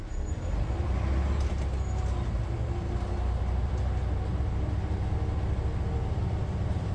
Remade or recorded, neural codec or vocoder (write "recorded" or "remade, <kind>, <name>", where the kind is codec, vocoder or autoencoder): recorded